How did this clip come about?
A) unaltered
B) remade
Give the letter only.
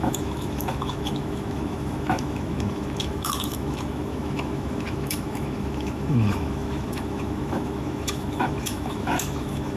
B